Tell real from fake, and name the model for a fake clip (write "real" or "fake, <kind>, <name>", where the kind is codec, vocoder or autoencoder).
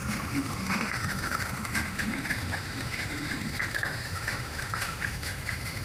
fake, autoencoder, DAC-VAE